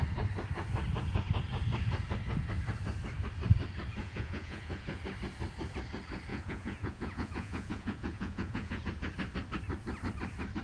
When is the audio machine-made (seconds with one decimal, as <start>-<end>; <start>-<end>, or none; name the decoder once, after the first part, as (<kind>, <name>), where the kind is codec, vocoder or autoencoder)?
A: 4.0-5.0 (vocoder, Vocos); 6.3-8.8